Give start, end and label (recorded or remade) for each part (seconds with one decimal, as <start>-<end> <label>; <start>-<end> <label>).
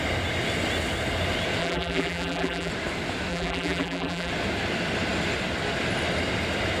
0.0-1.6 recorded; 1.6-2.7 remade; 2.7-3.3 recorded; 3.3-4.3 remade; 4.3-6.8 recorded